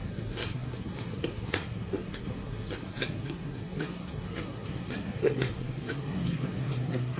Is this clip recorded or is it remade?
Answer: remade